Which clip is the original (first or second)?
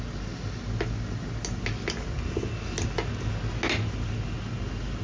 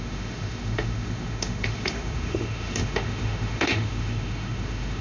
first